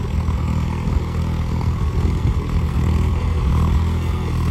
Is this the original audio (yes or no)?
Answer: no